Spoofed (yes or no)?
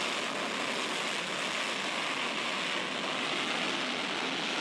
no